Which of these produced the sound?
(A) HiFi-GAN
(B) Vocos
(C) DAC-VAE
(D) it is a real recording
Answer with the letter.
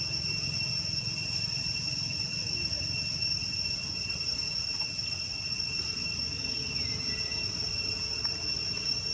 D